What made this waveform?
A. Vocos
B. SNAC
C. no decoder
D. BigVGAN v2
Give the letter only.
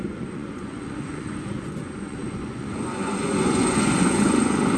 A